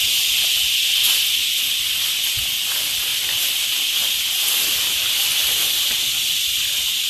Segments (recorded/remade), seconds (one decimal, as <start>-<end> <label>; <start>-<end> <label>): 0.0-0.8 recorded; 0.8-1.4 remade; 1.4-3.1 recorded; 3.1-3.9 remade; 3.9-5.4 recorded; 5.4-7.1 remade